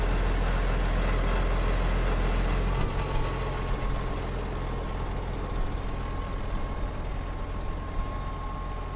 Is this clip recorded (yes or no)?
yes